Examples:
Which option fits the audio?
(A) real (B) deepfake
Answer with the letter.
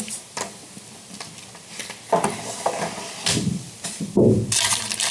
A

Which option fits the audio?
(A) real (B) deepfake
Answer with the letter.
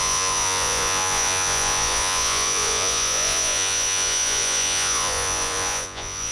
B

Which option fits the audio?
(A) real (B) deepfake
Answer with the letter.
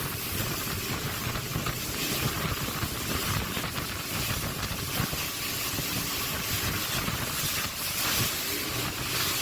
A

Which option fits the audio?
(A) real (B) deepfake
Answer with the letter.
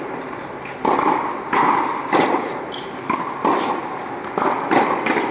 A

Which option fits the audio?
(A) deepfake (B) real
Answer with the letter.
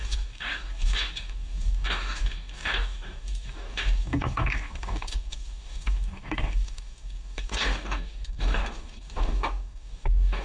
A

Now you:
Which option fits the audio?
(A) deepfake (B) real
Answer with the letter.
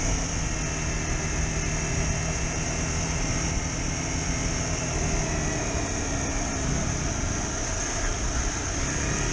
B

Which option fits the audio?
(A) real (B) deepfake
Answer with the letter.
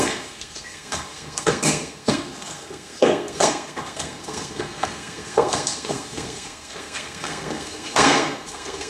B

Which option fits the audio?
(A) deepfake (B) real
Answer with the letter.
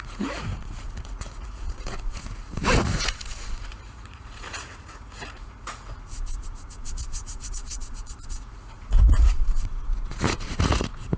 A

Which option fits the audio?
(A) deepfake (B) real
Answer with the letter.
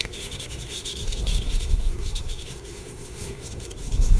A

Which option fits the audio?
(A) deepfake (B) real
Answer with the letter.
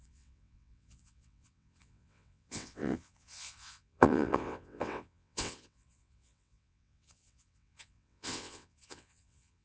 A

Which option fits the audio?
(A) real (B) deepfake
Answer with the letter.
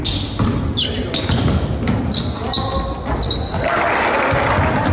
A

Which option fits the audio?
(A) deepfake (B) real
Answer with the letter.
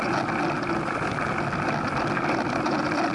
B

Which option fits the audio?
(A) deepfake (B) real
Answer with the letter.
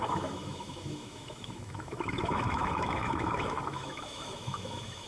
A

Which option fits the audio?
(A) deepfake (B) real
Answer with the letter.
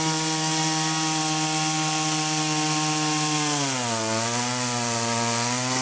B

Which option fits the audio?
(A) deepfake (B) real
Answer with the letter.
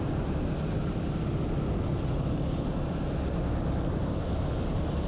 B